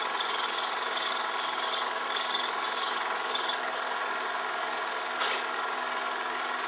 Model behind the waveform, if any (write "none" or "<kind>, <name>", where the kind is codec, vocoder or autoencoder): codec, DAC